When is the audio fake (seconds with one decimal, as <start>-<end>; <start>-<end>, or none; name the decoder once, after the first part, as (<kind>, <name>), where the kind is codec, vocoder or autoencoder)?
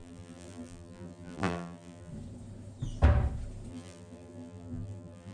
0.0-2.1 (vocoder, BigVGAN v2); 3.7-5.3